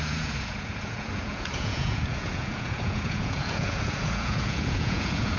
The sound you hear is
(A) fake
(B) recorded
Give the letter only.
A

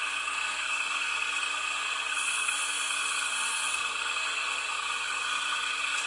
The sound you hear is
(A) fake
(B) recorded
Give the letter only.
A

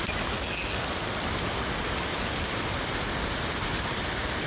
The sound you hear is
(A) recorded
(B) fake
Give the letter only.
A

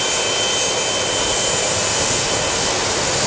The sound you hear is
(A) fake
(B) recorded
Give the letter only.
B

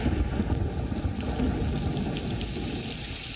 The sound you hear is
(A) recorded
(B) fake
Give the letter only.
A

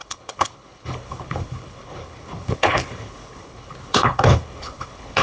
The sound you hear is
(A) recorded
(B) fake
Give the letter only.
B